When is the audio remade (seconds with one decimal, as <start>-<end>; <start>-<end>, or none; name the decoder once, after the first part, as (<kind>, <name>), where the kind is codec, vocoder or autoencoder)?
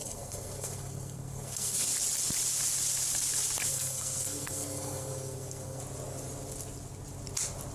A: 0.0-1.9 (codec, SNAC); 3.7-5.8